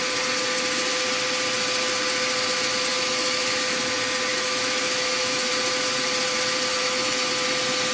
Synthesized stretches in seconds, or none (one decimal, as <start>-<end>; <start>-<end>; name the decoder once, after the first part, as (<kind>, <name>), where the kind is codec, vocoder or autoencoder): 2.9-3.8 (autoencoder, DAC-VAE); 4.3-5.5; 6.7-7.3